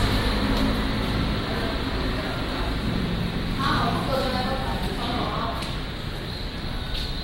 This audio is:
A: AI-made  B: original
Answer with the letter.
A